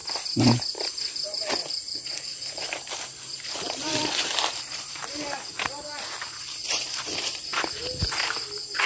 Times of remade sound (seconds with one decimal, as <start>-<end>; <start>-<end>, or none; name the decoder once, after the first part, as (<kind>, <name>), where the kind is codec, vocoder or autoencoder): 2.5-5.0 (vocoder, BigVGAN v2); 6.4-7.5; 8.2-8.9